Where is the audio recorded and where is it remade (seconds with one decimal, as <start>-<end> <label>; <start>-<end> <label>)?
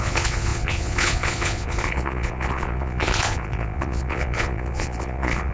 0.0-5.5 remade